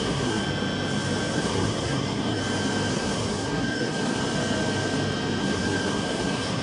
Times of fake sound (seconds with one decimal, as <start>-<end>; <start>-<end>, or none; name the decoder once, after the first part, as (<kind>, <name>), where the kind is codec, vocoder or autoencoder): 0.0-0.4 (codec, SNAC); 1.3-2.4; 2.9-4.2; 5.4-6.6